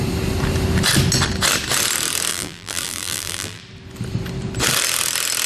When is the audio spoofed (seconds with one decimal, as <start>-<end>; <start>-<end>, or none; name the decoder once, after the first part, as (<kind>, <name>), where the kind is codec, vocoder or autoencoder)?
2.3-3.6 (vocoder, BigVGAN v2)